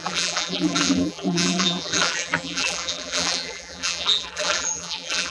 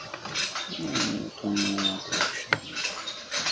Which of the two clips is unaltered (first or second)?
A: second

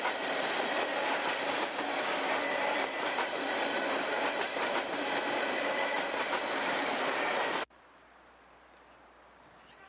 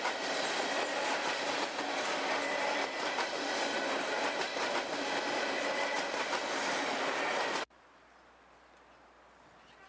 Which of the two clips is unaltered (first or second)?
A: second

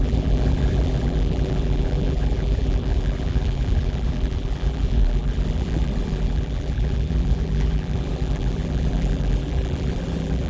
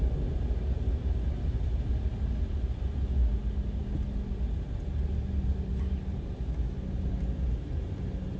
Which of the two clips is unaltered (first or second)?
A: second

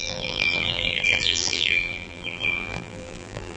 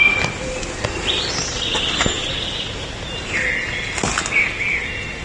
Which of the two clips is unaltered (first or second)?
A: second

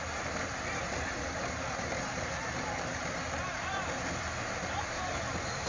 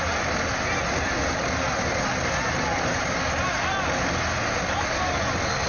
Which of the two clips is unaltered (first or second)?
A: second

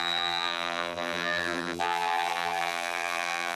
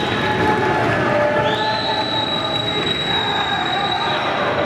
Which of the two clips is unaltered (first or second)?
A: second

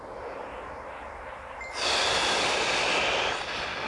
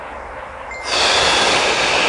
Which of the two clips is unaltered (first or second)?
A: second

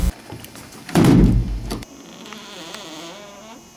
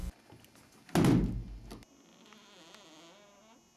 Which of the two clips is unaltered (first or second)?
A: second